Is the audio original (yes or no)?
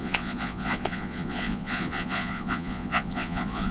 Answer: no